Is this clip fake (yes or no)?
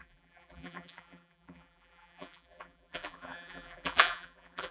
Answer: yes